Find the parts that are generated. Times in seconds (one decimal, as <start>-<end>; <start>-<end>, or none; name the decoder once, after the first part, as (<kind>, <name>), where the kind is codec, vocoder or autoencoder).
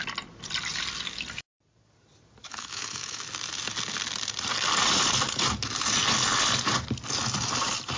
2.4-3.2 (autoencoder, DAC-VAE)